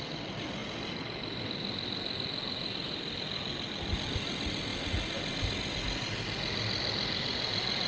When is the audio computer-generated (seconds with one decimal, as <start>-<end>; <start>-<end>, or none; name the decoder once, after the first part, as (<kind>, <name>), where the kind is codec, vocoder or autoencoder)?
none